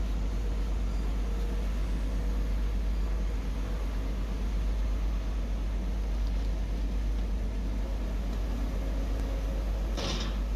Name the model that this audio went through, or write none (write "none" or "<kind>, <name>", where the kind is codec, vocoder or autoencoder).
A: none